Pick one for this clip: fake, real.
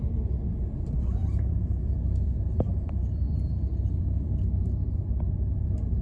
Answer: fake